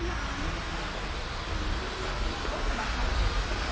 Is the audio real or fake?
real